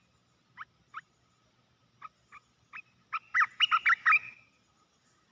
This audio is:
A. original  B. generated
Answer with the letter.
A